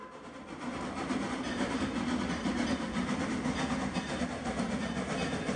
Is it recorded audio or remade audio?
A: recorded